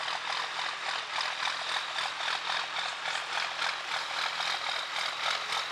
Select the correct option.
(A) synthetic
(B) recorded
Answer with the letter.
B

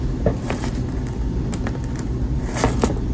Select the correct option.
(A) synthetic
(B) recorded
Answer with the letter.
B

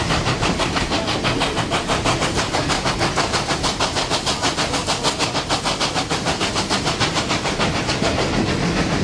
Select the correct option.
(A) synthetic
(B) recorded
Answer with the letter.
B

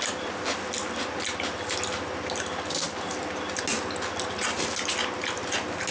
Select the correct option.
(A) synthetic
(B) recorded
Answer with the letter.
B